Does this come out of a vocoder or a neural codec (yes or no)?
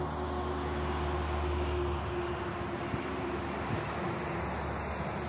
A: no